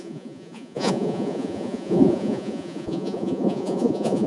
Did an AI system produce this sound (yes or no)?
yes